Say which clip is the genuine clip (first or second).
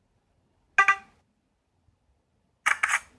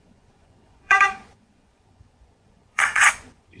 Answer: first